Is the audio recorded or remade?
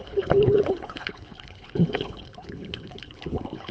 remade